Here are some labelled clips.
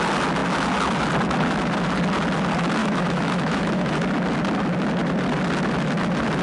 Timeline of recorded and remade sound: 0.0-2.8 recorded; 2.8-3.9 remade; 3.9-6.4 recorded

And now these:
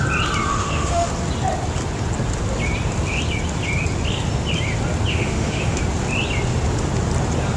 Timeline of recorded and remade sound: 0.0-0.5 recorded; 0.5-1.1 remade; 1.1-5.1 recorded; 5.1-5.8 remade; 5.8-7.6 recorded

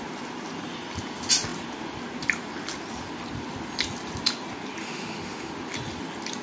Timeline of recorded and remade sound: 0.0-4.8 recorded; 4.8-5.5 remade; 5.5-6.4 recorded

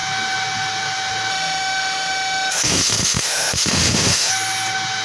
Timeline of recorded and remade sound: 0.0-1.3 recorded; 1.3-4.3 remade; 4.3-5.0 recorded

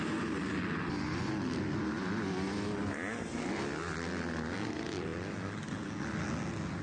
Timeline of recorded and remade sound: 0.0-6.8 recorded

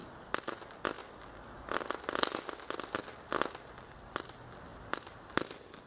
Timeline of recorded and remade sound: 0.0-5.9 recorded